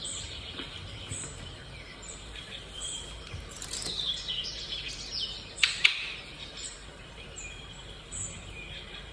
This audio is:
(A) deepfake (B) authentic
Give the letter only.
A